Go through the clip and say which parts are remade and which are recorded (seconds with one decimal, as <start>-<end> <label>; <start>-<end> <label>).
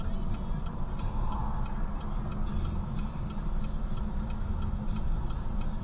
0.0-5.8 recorded